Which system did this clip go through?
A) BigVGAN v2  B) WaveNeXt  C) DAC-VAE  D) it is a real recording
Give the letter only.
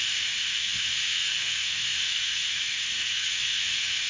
C